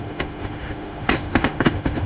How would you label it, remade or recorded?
remade